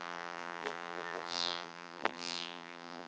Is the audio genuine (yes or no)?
no